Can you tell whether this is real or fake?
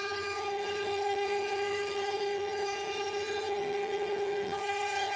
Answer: fake